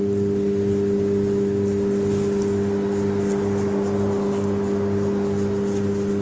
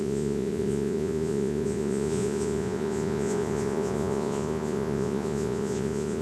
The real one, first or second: first